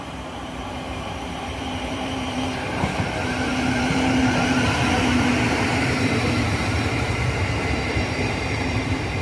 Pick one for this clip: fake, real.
fake